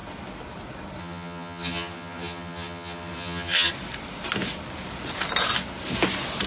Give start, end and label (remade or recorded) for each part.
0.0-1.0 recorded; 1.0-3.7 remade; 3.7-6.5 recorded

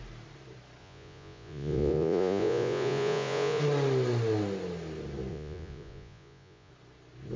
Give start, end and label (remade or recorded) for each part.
0.0-0.8 recorded; 0.8-3.6 remade; 3.6-5.3 recorded; 5.3-6.7 remade; 6.7-7.4 recorded